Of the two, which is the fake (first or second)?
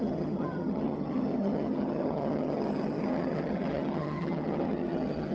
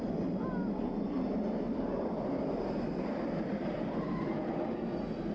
first